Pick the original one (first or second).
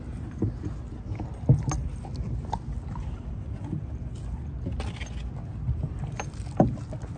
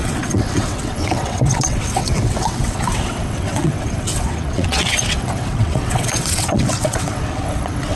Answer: first